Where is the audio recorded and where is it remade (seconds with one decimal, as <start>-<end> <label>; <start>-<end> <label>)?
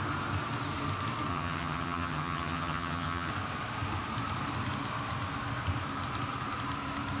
0.0-1.3 recorded; 1.3-3.3 remade; 3.3-7.2 recorded